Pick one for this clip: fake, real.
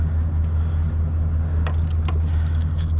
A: real